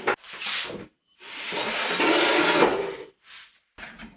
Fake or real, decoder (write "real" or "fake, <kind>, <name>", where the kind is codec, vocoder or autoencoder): real